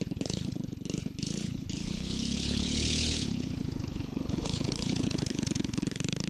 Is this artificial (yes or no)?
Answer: yes